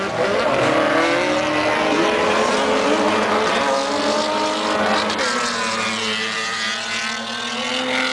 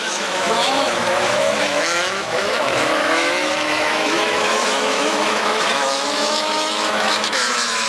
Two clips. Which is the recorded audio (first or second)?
first